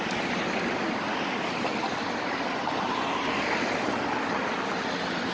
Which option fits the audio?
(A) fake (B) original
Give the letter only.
B